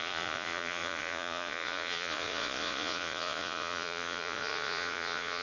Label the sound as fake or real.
fake